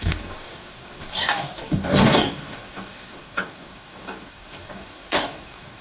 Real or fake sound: fake